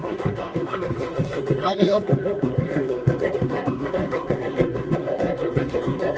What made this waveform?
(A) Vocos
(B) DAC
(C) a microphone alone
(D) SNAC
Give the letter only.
D